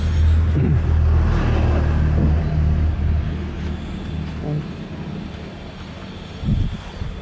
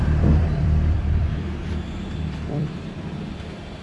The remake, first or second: second